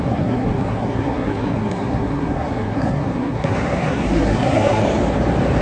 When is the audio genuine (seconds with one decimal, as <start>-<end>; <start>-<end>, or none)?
4.8-5.6